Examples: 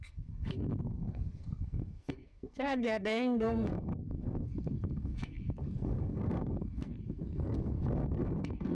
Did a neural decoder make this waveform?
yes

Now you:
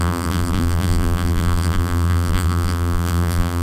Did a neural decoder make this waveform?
yes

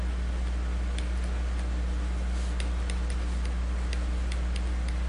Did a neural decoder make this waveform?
no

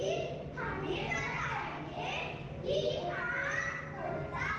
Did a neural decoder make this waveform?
no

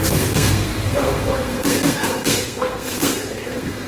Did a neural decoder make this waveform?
yes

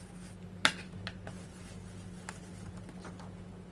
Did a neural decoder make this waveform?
no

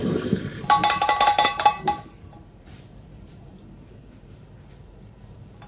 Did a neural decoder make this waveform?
yes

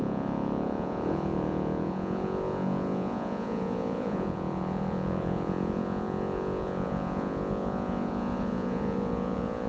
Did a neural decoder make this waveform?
yes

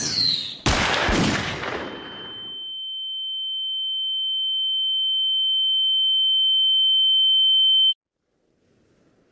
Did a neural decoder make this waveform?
no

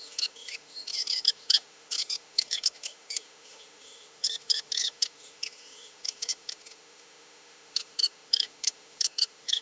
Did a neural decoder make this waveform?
yes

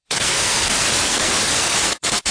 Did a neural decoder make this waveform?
yes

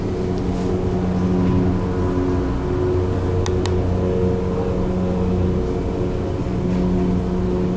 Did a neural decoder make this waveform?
no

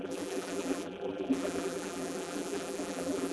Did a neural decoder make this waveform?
yes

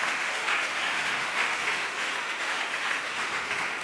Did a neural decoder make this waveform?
yes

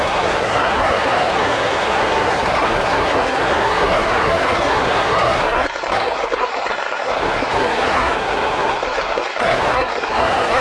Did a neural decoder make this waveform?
yes